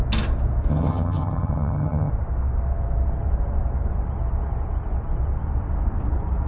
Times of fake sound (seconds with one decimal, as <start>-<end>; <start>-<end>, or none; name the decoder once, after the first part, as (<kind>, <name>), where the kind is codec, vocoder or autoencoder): 0.7-2.1 (vocoder, HiFi-GAN)